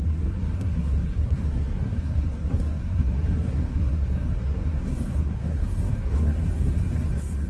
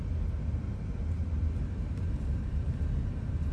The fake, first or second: first